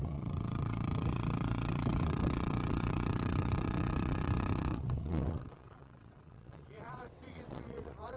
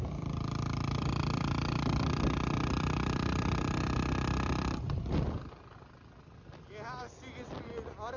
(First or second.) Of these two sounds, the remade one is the first